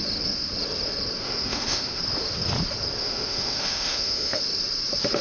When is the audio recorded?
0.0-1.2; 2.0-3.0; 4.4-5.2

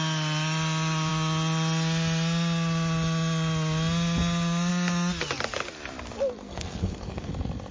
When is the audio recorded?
0.0-6.4; 7.3-7.7

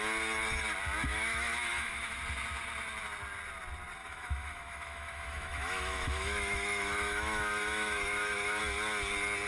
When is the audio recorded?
0.0-1.1; 2.2-4.0; 8.6-9.5

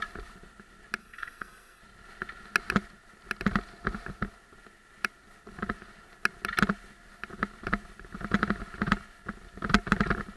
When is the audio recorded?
0.0-1.0; 1.8-10.4

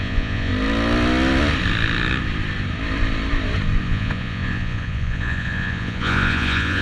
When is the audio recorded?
0.5-3.8

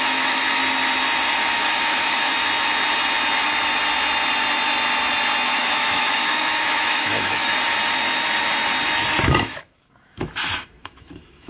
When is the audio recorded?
0.6-1.3; 2.3-5.6; 7.5-9.2

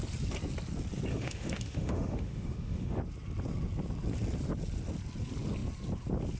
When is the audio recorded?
0.0-1.1; 3.0-6.4

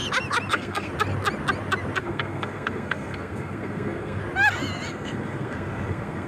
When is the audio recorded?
0.0-0.5; 0.9-2.0; 4.2-4.9